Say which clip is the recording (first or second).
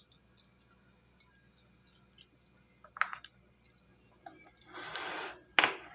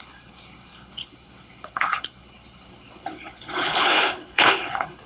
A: first